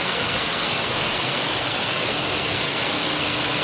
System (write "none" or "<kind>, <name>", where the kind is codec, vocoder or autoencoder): codec, SNAC